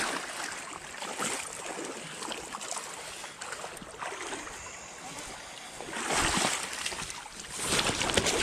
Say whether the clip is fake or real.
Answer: real